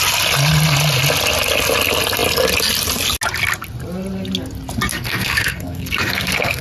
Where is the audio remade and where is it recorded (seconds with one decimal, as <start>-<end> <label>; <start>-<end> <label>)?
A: 0.0-4.9 recorded; 4.9-6.6 remade